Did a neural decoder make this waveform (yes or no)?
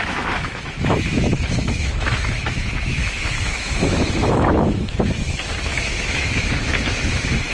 yes